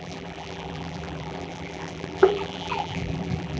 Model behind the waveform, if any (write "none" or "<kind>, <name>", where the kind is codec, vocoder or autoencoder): vocoder, BigVGAN v2